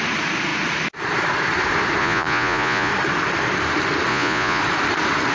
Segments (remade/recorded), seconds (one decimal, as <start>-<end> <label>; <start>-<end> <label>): 0.0-2.0 recorded; 2.0-2.9 remade; 2.9-4.1 recorded; 4.1-4.6 remade; 4.6-5.3 recorded